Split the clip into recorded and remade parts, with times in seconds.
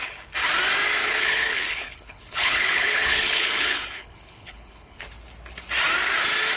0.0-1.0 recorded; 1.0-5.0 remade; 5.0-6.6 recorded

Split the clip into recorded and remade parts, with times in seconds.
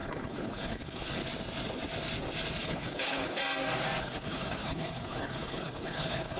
0.0-1.2 remade; 1.2-2.6 recorded; 2.6-3.4 remade; 3.4-4.0 recorded; 4.0-6.4 remade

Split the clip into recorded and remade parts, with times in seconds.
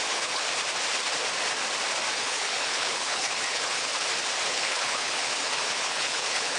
0.0-0.5 remade; 0.5-2.1 recorded; 2.1-3.9 remade; 3.9-4.5 recorded; 4.5-6.6 remade